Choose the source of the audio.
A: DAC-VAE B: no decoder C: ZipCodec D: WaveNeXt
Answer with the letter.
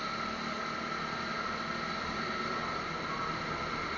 B